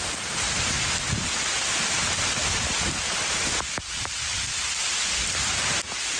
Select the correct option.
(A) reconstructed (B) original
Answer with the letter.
B